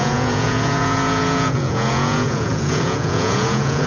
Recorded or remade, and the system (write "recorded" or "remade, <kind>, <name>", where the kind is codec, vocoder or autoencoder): remade, vocoder, Vocos